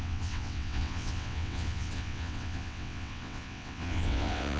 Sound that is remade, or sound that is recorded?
remade